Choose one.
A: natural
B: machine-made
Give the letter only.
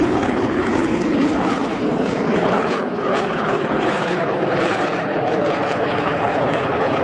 B